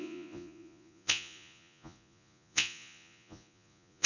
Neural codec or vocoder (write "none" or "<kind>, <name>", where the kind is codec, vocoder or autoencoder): vocoder, Vocos